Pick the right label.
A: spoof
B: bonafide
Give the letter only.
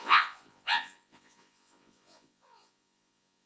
A